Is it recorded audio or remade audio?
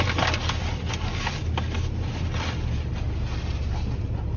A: recorded